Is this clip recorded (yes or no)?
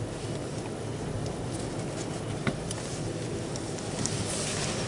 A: yes